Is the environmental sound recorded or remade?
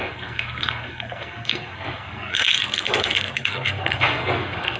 remade